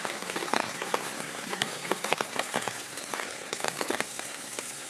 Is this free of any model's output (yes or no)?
no